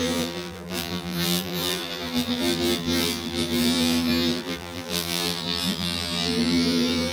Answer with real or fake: fake